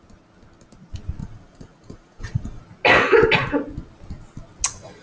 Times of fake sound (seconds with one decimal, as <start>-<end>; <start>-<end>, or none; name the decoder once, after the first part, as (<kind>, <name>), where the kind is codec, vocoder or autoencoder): 1.2-2.6 (vocoder, Vocos)